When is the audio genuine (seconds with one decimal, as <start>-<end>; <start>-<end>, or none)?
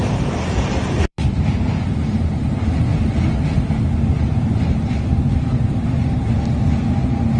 2.5-4.1; 6.4-7.4